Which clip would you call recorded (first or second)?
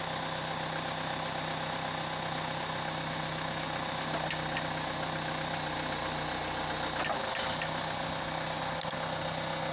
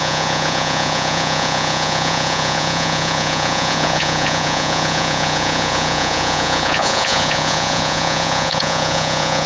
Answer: first